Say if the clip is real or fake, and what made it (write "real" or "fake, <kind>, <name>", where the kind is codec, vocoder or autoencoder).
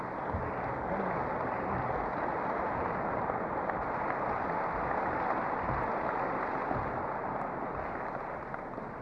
real